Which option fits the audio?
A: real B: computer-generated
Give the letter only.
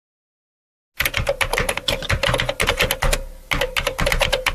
A